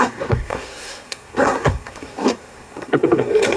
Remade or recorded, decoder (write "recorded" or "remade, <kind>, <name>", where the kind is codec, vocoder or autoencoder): remade, codec, SNAC